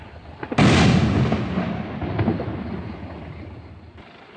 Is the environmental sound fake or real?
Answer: real